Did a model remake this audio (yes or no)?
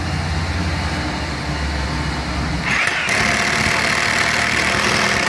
no